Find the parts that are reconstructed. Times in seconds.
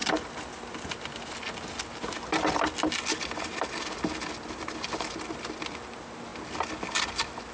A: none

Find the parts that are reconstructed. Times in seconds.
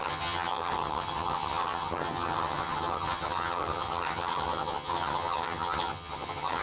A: 0.0-6.6 (vocoder, HiFi-GAN)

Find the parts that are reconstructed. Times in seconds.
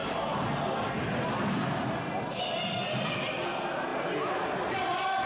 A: none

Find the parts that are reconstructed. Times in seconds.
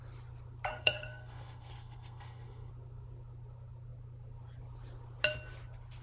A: 0.7-2.7 (codec, SNAC)